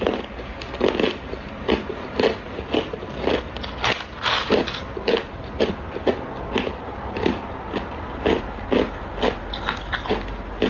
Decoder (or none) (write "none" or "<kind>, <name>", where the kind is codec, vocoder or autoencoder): none